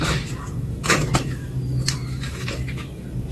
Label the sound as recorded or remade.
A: remade